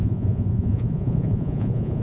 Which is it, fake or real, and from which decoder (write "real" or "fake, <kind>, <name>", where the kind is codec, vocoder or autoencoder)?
fake, vocoder, Vocos